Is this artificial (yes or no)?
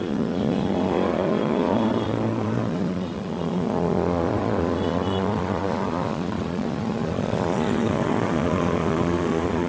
yes